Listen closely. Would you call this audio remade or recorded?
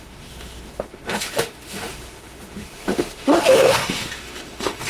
remade